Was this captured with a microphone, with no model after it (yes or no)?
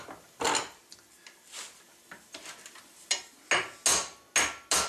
yes